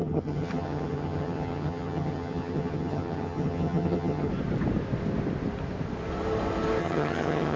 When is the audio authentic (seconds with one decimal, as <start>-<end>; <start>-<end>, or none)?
4.3-6.8